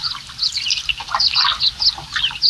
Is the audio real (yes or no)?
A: yes